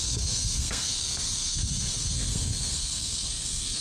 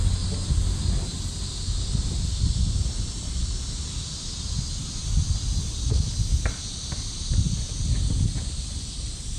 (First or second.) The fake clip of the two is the first